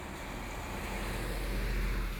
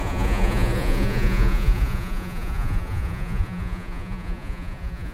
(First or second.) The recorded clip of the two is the first